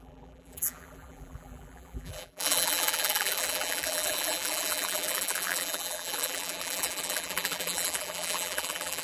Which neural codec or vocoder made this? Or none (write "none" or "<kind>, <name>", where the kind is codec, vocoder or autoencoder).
vocoder, BigVGAN v2